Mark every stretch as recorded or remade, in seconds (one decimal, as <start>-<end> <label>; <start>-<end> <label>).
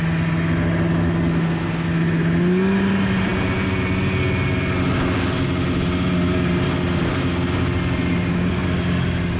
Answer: 0.0-9.4 recorded